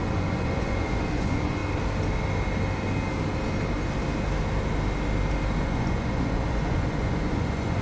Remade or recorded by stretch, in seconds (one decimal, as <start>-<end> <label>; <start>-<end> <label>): 0.0-1.6 remade; 1.6-5.6 recorded; 5.6-7.8 remade

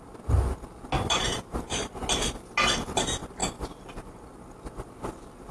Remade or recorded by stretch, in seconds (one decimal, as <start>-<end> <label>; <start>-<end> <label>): 0.0-1.2 recorded; 1.2-1.9 remade; 1.9-3.4 recorded; 3.4-4.1 remade; 4.1-5.5 recorded

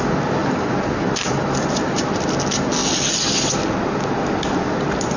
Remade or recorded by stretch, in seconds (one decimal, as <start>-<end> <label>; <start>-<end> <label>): 0.0-0.4 recorded; 0.4-2.2 remade; 2.2-5.2 recorded

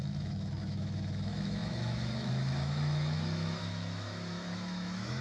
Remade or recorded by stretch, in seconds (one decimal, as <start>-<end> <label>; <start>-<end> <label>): 0.0-5.2 remade

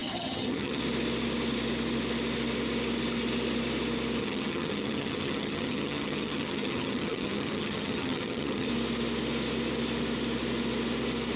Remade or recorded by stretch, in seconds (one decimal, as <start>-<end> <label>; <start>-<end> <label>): 0.0-0.8 remade; 0.8-4.2 recorded; 4.2-8.7 remade; 8.7-11.4 recorded

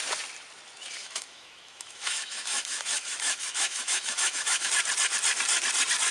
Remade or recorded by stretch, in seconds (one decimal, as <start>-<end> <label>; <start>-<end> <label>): 0.0-1.0 recorded; 1.0-4.7 remade; 4.7-6.1 recorded

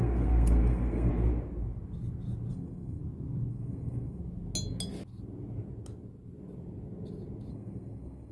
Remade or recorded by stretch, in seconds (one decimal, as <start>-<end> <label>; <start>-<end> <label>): 0.0-1.1 remade; 1.1-2.5 recorded; 2.5-3.0 remade; 3.0-3.5 recorded; 3.5-4.2 remade; 4.2-7.5 recorded; 7.5-8.3 remade

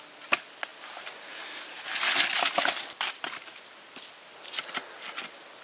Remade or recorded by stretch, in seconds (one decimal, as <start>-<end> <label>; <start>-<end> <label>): 0.0-5.6 recorded